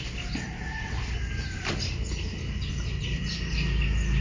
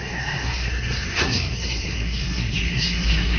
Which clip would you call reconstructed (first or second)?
second